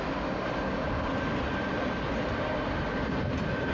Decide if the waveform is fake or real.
real